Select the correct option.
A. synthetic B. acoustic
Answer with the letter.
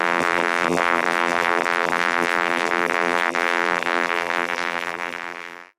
A